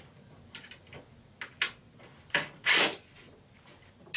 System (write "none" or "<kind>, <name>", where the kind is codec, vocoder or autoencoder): none